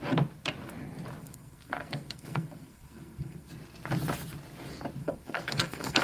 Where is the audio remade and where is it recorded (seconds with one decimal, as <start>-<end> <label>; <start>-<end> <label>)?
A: 0.0-1.2 recorded; 1.2-3.5 remade; 3.5-5.0 recorded; 5.0-6.0 remade